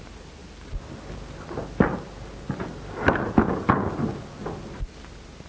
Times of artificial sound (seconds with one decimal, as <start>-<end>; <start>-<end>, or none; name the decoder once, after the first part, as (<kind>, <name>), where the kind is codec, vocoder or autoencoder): none